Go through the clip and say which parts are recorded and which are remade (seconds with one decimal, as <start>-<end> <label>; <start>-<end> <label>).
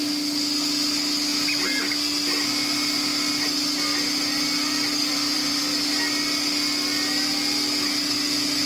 0.0-5.1 recorded; 5.1-5.6 remade; 5.6-8.7 recorded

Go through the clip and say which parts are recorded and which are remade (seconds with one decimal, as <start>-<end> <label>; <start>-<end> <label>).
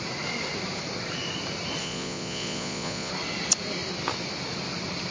0.0-1.8 recorded; 1.8-3.1 remade; 3.1-5.1 recorded